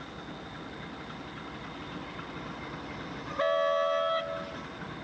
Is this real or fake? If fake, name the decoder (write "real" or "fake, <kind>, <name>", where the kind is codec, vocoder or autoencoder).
real